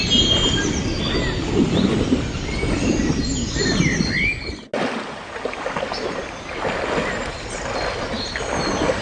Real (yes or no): yes